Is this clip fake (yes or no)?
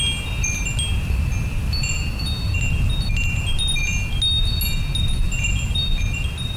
no